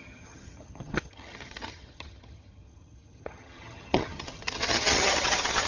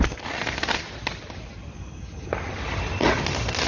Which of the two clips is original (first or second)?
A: second